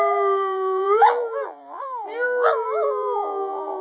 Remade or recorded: remade